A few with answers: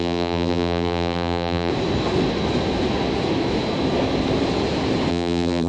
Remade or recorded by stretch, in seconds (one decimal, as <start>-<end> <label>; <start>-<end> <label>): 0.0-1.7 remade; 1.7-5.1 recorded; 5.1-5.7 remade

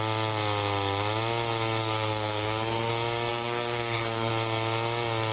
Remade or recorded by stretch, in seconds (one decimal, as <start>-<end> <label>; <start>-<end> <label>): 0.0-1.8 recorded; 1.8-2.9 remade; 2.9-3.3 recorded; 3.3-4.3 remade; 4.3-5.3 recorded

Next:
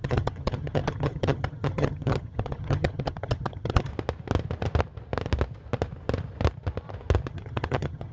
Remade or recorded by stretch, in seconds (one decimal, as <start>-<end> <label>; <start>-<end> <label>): 0.0-3.9 remade; 3.9-7.3 recorded; 7.3-8.1 remade

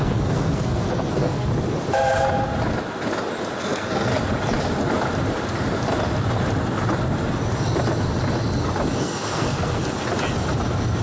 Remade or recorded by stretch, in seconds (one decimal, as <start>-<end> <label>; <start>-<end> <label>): 0.0-1.5 remade; 1.5-3.6 recorded; 3.6-4.1 remade; 4.1-9.0 recorded; 9.0-9.8 remade; 9.8-11.0 recorded